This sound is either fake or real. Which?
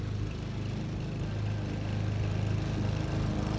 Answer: real